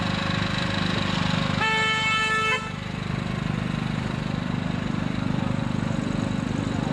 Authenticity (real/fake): real